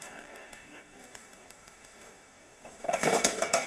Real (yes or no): no